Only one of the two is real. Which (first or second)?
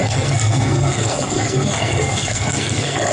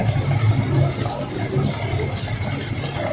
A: second